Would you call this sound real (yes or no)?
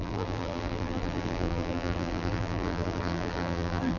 no